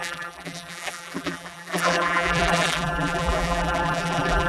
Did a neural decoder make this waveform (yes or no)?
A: yes